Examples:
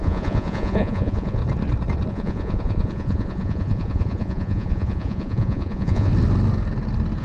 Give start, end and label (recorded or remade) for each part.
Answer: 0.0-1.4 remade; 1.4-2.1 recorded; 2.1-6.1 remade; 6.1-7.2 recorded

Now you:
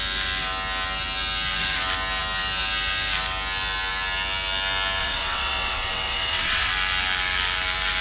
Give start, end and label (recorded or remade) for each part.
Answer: 0.0-5.0 recorded; 5.0-6.7 remade; 6.7-8.0 recorded

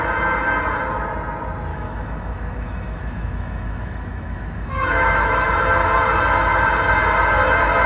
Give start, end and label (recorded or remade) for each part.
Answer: 0.0-1.7 recorded; 1.7-5.5 remade; 5.5-7.9 recorded

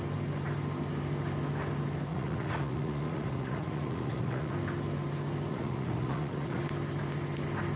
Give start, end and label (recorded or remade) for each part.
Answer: 0.0-2.1 recorded; 2.1-4.5 remade; 4.5-5.5 recorded; 5.5-6.6 remade; 6.6-7.8 recorded

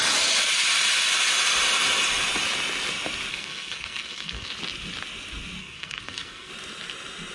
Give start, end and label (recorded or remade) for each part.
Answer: 0.0-3.3 recorded; 3.3-4.5 remade; 4.5-5.6 recorded; 5.6-6.5 remade; 6.5-7.3 recorded

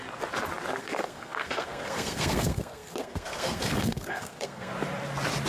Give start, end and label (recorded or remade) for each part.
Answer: 0.0-0.8 recorded; 0.8-4.7 remade; 4.7-5.5 recorded

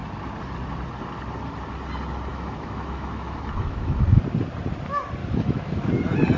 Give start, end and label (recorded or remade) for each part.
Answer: 0.0-2.3 recorded; 2.3-4.2 remade; 4.2-5.2 recorded; 5.2-5.9 remade; 5.9-6.4 recorded